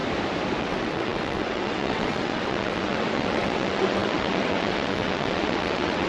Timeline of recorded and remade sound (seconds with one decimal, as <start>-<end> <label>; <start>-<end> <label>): 0.0-0.6 recorded; 0.6-6.1 remade

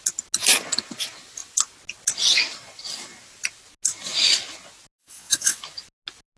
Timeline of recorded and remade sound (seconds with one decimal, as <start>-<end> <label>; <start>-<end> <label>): 0.0-5.0 recorded; 5.0-5.6 remade; 5.6-6.4 recorded

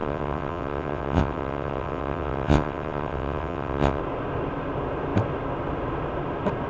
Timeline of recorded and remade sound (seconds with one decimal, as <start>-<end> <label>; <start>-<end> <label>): 0.0-4.0 remade; 4.0-6.7 recorded

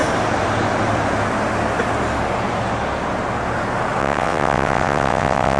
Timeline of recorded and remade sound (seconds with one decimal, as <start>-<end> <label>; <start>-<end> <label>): 0.0-4.0 recorded; 4.0-5.6 remade

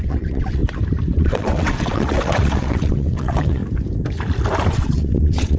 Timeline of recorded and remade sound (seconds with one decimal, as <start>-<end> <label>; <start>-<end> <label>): 0.0-0.6 remade; 0.6-1.2 recorded; 1.2-3.6 remade; 3.6-4.7 recorded; 4.7-5.6 remade

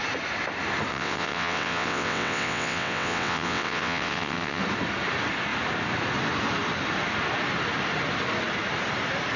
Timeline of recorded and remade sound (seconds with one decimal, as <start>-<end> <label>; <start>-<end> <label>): 0.0-0.9 recorded; 0.9-4.6 remade; 4.6-9.4 recorded